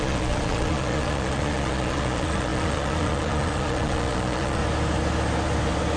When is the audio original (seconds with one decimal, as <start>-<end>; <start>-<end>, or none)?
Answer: 4.6-6.0